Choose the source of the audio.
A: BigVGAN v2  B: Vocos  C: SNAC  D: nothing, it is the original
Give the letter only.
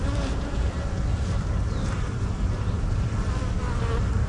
D